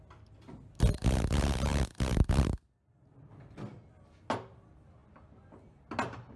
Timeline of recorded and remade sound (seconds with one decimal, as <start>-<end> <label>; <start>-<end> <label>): 0.0-1.7 recorded; 1.7-2.3 remade; 2.3-6.4 recorded